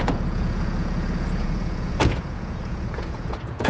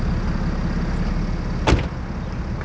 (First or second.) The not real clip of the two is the first